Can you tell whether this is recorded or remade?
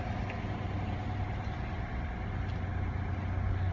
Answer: recorded